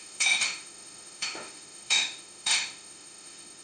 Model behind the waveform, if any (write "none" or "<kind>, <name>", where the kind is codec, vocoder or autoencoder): autoencoder, DAC-VAE